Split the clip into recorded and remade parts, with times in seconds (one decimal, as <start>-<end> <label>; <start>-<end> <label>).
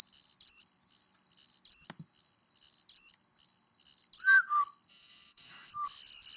0.0-4.9 recorded; 4.9-5.7 remade; 5.7-6.4 recorded